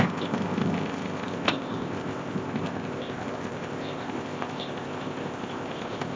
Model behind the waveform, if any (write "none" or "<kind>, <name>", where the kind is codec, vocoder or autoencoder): codec, ZipCodec